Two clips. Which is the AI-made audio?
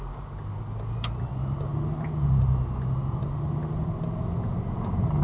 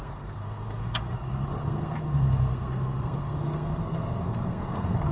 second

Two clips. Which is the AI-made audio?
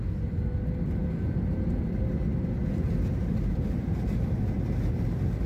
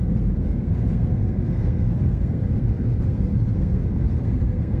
second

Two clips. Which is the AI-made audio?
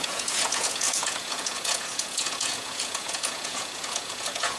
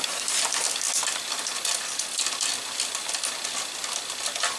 first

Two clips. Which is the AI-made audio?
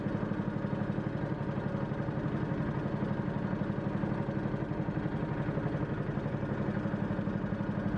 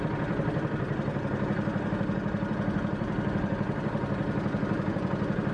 second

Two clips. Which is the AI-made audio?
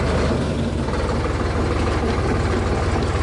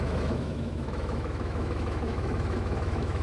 second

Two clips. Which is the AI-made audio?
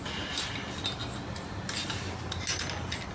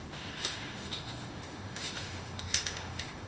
second